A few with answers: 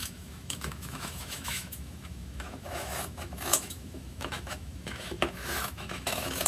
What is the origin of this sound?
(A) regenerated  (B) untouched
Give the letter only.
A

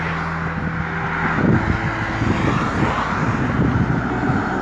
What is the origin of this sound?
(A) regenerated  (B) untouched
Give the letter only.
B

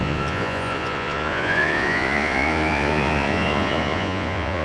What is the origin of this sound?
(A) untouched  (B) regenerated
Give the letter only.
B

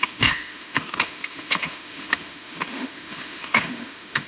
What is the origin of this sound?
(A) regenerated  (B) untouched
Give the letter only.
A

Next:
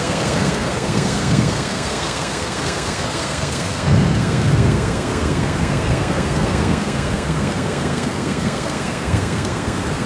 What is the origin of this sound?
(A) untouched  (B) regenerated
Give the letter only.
B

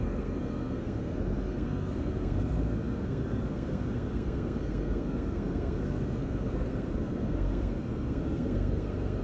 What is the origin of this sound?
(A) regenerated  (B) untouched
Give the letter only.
A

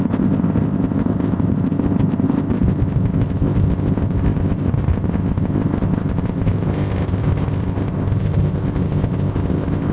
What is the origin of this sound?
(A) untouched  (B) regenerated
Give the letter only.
B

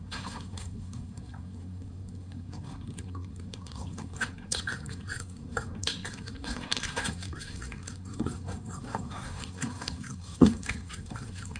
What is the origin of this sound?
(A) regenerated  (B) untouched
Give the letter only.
A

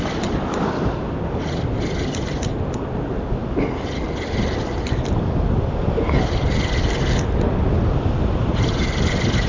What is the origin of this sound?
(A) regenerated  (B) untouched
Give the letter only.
B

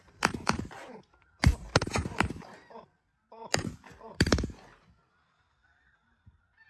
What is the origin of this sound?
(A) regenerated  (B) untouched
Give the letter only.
A